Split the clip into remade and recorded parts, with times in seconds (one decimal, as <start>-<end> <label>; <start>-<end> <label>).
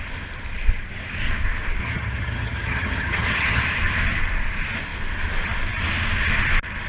0.0-1.8 recorded; 1.8-3.6 remade; 3.6-6.9 recorded